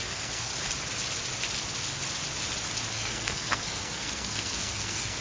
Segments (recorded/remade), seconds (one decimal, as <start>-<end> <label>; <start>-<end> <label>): 0.0-0.5 remade; 0.5-2.9 recorded; 2.9-5.2 remade